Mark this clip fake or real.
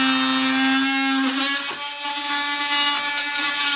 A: real